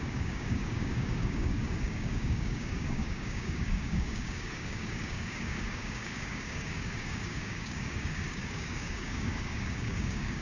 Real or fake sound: fake